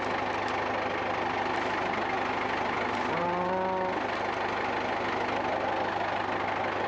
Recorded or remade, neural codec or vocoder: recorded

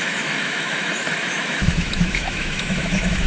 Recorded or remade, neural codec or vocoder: remade, autoencoder, DAC-VAE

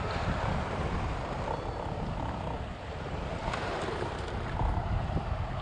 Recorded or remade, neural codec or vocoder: recorded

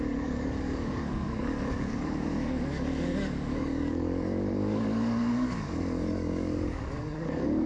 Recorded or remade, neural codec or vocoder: remade, codec, DAC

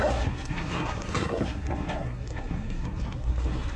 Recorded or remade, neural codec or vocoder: remade, codec, SNAC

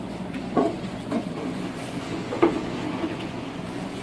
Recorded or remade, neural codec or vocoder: remade, vocoder, Vocos